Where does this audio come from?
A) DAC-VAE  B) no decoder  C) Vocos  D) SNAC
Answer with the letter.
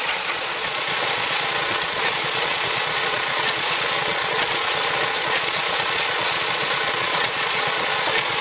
C